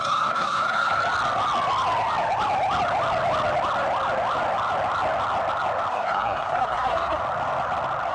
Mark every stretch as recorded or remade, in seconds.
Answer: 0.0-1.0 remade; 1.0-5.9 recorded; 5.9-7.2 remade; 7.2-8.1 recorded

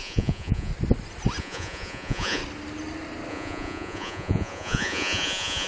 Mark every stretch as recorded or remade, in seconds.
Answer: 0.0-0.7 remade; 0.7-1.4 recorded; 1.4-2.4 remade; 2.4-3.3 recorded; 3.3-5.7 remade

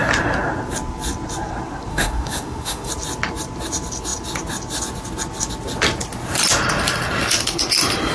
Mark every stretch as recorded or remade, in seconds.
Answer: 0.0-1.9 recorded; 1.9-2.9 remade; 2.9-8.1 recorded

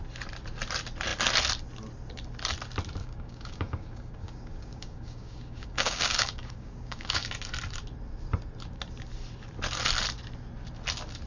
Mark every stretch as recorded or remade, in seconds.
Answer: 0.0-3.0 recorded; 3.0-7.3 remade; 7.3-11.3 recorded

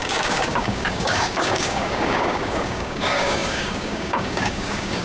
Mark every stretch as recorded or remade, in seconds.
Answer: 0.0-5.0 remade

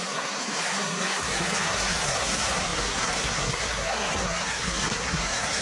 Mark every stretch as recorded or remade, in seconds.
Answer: 0.0-5.6 remade

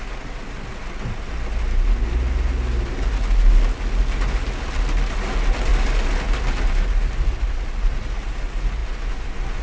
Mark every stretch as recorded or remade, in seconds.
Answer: 0.0-9.6 recorded